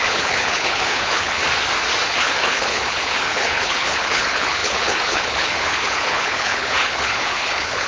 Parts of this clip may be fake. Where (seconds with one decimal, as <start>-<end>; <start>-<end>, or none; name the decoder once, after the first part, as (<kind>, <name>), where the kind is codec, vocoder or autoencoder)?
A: 0.0-1.4 (codec, HILCodec); 2.2-7.9